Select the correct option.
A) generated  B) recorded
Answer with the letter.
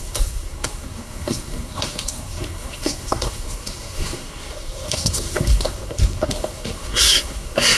A